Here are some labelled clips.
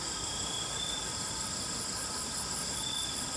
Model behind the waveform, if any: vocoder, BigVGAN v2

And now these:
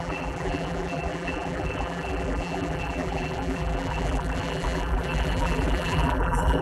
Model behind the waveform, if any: vocoder, BigVGAN v2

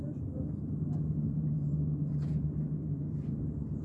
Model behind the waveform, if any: vocoder, BigVGAN v2